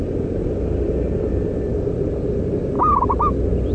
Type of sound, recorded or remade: recorded